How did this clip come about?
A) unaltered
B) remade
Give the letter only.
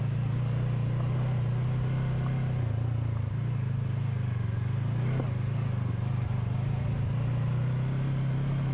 A